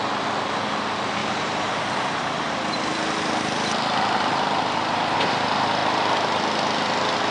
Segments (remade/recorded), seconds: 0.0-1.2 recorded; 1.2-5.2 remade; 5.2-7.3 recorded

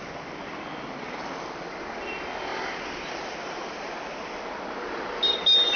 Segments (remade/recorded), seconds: 0.0-5.8 recorded